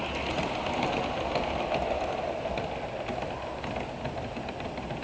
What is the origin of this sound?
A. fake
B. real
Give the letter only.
B